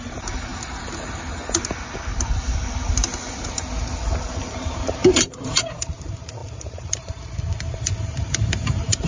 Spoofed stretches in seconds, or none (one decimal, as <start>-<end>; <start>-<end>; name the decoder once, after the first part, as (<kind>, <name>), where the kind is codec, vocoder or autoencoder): 0.0-0.5 (vocoder, BigVGAN v2); 4.2-9.1